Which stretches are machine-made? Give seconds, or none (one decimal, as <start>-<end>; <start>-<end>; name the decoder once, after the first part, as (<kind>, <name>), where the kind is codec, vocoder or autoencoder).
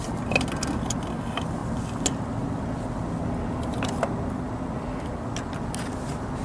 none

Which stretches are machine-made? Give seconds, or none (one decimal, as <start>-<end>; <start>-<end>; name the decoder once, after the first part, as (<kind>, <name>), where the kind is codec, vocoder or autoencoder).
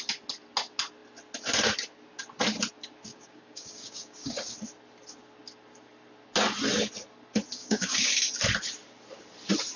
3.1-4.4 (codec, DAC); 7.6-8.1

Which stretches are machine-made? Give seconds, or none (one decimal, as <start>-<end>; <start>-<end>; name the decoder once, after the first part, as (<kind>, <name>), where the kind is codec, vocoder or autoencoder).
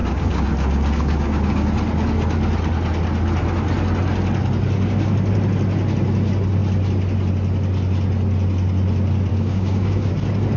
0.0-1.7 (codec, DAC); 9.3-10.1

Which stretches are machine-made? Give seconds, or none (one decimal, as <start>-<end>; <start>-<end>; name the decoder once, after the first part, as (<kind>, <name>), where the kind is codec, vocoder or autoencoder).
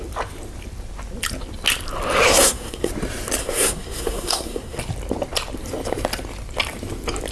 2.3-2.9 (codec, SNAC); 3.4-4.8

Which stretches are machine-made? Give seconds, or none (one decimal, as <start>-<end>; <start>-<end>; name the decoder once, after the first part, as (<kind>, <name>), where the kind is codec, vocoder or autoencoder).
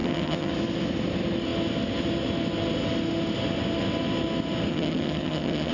0.0-0.5 (vocoder, HiFi-GAN); 4.7-5.7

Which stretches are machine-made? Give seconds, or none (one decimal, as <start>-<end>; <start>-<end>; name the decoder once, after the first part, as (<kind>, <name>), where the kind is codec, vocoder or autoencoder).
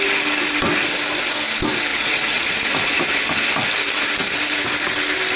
1.9-3.0 (vocoder, Vocos)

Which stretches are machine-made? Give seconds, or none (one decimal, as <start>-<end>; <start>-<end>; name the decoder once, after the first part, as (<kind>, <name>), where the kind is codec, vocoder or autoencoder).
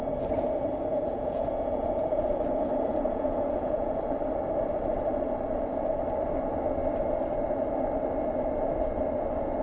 0.9-2.3 (vocoder, Vocos); 2.9-4.0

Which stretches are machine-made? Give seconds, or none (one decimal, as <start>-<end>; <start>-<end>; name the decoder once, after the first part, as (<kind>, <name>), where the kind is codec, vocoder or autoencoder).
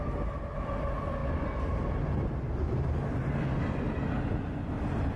none